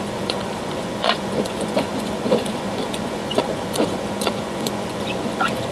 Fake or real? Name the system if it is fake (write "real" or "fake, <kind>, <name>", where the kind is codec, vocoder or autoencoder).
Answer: fake, vocoder, Vocos